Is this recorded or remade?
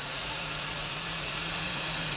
remade